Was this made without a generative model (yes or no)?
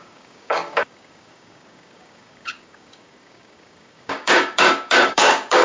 no